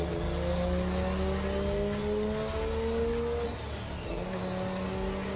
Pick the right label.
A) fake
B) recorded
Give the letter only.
B